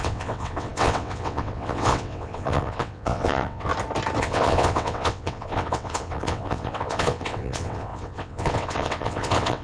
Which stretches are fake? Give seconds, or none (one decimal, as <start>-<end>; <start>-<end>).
0.0-3.7; 4.2-9.6